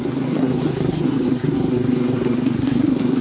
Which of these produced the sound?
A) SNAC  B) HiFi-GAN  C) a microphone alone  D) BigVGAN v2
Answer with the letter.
A